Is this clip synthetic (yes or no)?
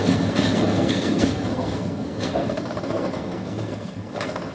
yes